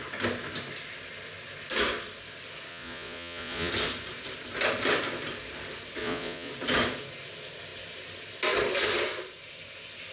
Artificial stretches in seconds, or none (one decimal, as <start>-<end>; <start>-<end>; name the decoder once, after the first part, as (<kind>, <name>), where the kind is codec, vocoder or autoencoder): 2.7-3.7 (vocoder, Vocos); 6.0-6.5